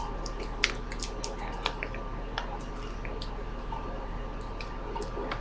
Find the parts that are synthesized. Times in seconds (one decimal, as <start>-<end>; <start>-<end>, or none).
none